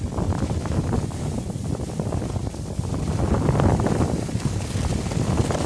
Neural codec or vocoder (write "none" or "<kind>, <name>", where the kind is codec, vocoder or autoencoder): none